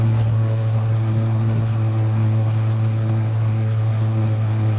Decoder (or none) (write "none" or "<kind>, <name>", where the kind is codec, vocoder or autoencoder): codec, SNAC